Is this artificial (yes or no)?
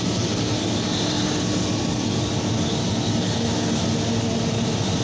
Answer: no